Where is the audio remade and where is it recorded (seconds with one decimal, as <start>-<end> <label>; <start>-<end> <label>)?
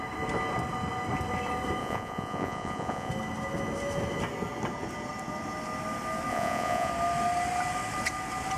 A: 0.0-1.8 recorded; 1.8-3.1 remade; 3.1-6.3 recorded; 6.3-6.9 remade; 6.9-8.6 recorded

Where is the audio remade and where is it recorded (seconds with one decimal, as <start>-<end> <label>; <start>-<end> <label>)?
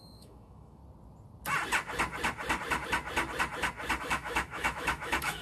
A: 0.0-0.8 remade; 0.8-4.0 recorded; 4.0-5.4 remade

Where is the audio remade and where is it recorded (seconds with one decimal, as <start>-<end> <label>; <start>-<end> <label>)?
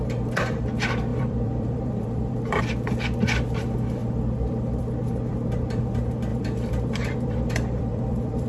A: 0.0-1.1 recorded; 1.1-2.6 remade; 2.6-4.0 recorded; 4.0-4.8 remade; 4.8-6.3 recorded; 6.3-8.5 remade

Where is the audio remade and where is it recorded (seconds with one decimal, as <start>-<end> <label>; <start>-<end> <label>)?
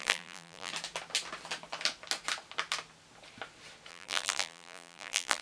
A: 0.0-0.7 remade; 0.7-3.9 recorded; 3.9-5.4 remade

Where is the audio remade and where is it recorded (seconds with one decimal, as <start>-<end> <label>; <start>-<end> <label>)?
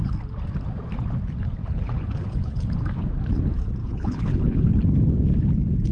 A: 0.0-1.6 recorded; 1.6-2.6 remade; 2.6-3.8 recorded; 3.8-4.7 remade; 4.7-5.9 recorded